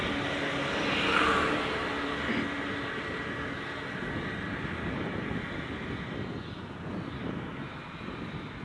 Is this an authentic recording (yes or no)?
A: yes